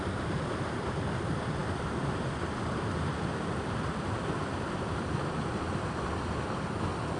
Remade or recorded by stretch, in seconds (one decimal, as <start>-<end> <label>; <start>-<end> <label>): 0.0-7.2 recorded

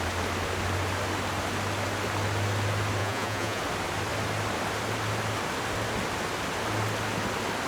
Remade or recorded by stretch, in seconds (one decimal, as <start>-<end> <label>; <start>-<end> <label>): 0.0-3.0 recorded; 3.0-3.6 remade; 3.6-7.7 recorded